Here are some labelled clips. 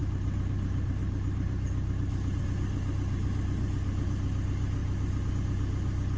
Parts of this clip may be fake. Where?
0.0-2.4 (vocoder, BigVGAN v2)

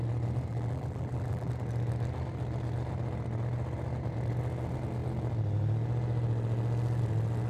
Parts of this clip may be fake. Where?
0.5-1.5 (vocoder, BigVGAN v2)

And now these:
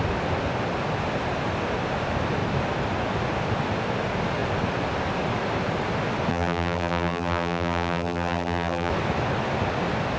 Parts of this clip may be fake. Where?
6.3-8.9 (vocoder, BigVGAN v2)

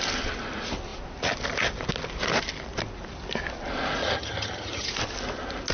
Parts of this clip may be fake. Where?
4.0-4.9 (vocoder, HiFi-GAN)

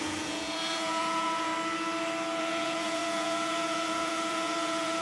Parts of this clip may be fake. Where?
0.0-1.5 (vocoder, Vocos); 2.4-5.0

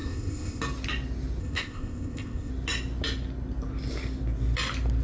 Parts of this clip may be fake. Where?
0.0-0.6 (codec, ZipCodec); 1.4-2.5

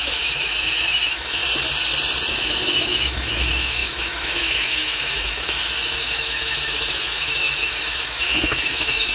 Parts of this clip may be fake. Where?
0.0-1.4 (autoencoder, DAC-VAE); 2.3-9.1

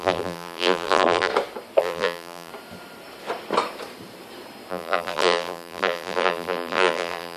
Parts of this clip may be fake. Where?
0.0-1.3 (vocoder, BigVGAN v2); 1.8-2.5; 4.7-7.4